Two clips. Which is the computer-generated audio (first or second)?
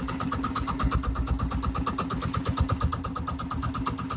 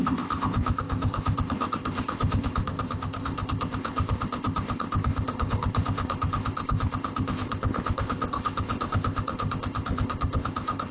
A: second